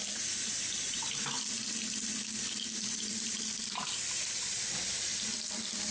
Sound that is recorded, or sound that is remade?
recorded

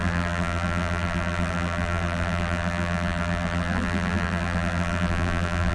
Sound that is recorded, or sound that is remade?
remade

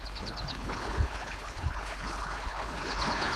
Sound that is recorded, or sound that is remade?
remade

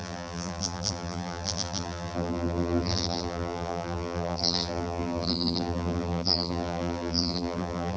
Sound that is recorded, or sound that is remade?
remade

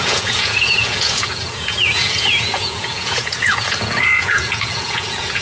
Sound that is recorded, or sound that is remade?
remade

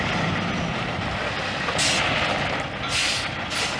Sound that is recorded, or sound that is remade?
recorded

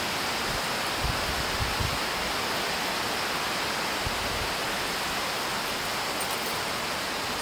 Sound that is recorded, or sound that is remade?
recorded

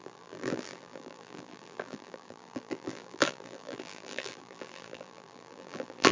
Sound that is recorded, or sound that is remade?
remade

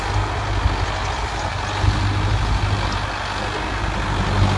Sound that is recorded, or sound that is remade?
recorded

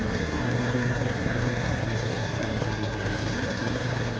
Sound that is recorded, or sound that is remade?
remade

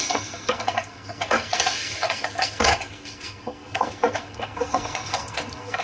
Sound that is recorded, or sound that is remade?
remade